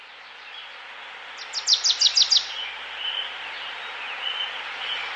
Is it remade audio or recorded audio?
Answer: recorded